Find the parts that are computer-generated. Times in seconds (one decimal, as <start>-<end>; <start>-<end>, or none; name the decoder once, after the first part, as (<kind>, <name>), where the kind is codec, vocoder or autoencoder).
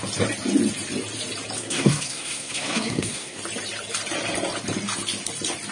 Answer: 1.6-3.4 (codec, SNAC)